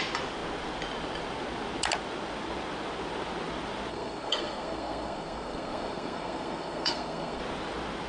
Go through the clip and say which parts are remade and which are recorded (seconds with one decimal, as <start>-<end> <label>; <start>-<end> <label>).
0.0-3.9 recorded; 3.9-7.4 remade; 7.4-8.1 recorded